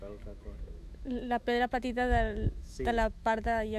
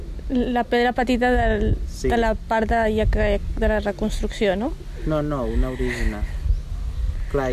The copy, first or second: first